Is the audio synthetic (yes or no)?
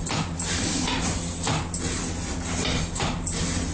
no